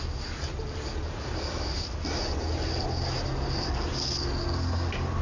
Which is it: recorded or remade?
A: recorded